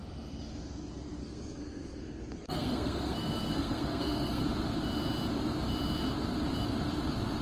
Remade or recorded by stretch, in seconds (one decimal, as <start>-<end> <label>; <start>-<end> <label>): 0.0-1.2 recorded; 1.2-4.4 remade; 4.4-7.4 recorded